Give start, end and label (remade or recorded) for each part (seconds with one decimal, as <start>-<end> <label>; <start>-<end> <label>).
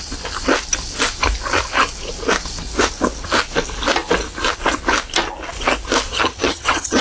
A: 0.0-6.1 recorded; 6.1-7.0 remade